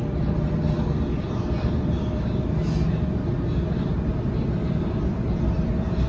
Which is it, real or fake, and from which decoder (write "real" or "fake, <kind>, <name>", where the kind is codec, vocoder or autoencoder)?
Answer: real